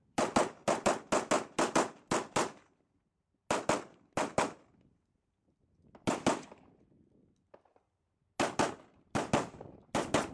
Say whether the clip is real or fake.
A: real